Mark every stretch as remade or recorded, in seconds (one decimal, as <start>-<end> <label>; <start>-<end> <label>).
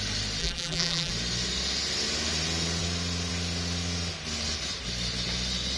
0.0-0.4 recorded; 0.4-1.1 remade; 1.1-5.8 recorded